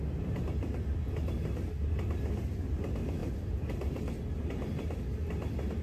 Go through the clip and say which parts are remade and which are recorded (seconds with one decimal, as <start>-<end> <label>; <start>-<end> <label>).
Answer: 0.0-3.2 recorded; 3.2-5.3 remade; 5.3-5.8 recorded